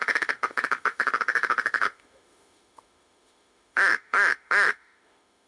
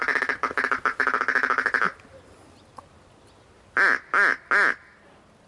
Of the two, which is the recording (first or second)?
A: second